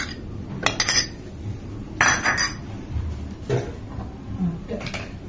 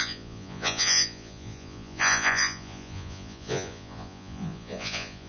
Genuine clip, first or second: first